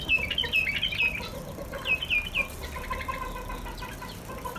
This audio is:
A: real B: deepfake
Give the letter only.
A